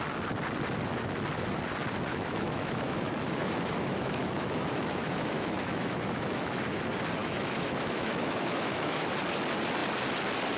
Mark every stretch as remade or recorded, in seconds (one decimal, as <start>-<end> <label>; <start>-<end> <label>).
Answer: 0.0-2.1 recorded; 2.1-6.8 remade; 6.8-7.2 recorded; 7.2-9.1 remade; 9.1-10.6 recorded